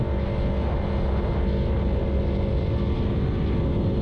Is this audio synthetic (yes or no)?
no